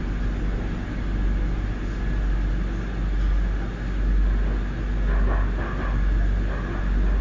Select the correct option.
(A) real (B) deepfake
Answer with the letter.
A